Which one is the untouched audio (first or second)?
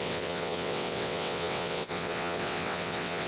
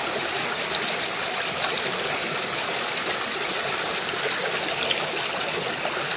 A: second